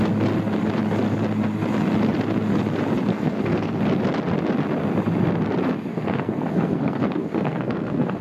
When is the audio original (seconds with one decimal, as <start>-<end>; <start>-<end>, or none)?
0.0-3.1; 3.8-5.9